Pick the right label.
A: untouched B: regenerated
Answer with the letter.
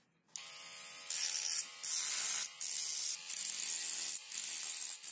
A